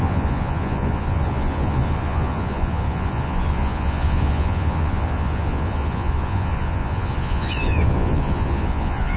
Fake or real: fake